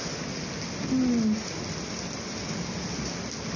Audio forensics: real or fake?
real